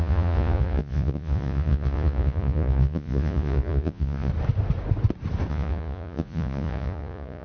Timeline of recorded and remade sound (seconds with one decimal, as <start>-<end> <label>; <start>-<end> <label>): 0.0-4.3 remade; 4.3-5.5 recorded; 5.5-7.4 remade

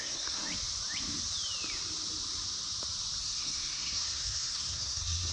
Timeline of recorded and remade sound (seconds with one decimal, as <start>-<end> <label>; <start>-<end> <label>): 0.0-0.4 remade; 0.4-3.2 recorded; 3.2-5.3 remade

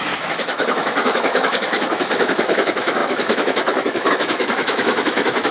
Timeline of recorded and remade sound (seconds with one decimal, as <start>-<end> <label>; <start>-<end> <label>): 0.0-5.5 remade

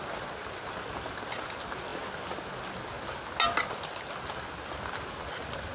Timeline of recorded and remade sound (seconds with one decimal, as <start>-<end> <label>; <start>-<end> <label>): 0.0-5.7 recorded

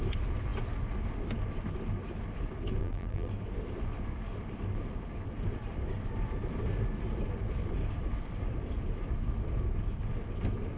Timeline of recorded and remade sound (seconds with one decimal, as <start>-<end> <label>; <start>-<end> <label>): 0.0-2.8 recorded; 2.8-3.3 remade; 3.3-10.8 recorded